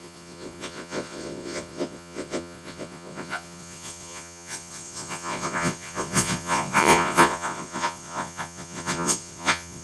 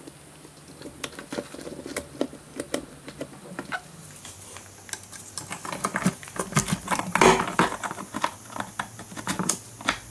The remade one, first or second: first